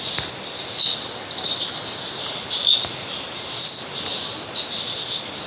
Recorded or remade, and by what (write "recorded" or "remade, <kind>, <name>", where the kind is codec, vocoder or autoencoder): recorded